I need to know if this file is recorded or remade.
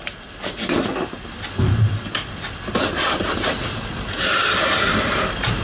remade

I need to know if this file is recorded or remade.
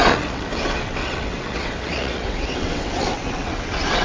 remade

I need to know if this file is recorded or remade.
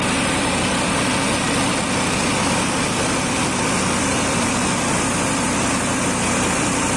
recorded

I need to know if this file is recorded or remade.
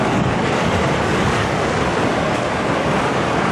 remade